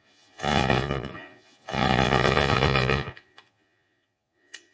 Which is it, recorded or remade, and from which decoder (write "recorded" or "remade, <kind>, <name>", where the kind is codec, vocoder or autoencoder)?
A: remade, vocoder, Vocos